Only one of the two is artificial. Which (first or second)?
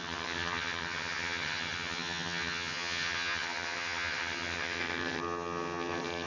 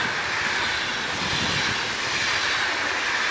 first